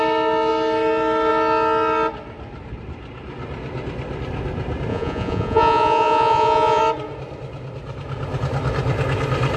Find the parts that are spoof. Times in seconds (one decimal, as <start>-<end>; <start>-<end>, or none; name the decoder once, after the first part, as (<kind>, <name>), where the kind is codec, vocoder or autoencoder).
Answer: 4.9-6.8 (vocoder, Vocos)